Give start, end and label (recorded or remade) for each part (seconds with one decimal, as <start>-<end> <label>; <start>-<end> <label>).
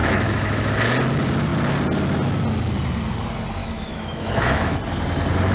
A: 0.0-0.7 remade; 0.7-3.6 recorded; 3.6-4.8 remade; 4.8-5.5 recorded